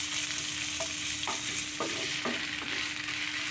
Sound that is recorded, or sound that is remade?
recorded